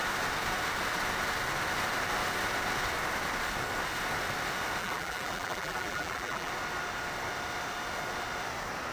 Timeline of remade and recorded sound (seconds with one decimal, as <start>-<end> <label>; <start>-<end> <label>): 0.0-4.8 recorded; 4.8-6.5 remade; 6.5-8.9 recorded